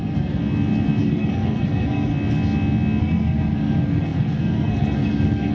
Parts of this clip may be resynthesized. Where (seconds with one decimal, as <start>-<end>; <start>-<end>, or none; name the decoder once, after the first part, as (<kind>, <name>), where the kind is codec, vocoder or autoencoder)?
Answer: 0.0-0.4 (codec, SNAC); 1.0-2.1; 3.0-5.5